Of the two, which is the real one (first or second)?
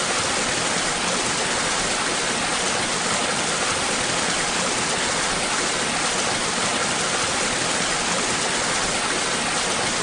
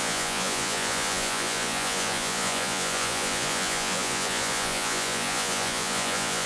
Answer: first